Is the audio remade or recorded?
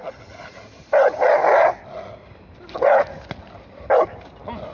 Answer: recorded